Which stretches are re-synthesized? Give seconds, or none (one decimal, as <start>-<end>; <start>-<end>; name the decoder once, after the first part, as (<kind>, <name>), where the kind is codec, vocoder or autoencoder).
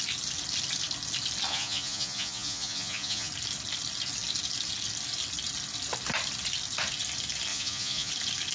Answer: 1.5-3.3 (vocoder, Vocos); 7.5-8.1